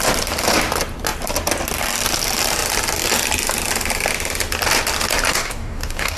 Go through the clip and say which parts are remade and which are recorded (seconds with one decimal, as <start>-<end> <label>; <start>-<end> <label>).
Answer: 0.0-5.3 recorded; 5.3-6.2 remade